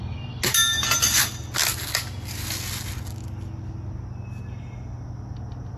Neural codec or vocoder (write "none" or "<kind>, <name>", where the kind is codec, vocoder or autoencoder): none